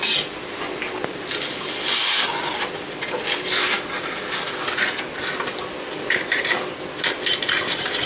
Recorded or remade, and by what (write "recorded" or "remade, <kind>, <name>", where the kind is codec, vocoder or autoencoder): recorded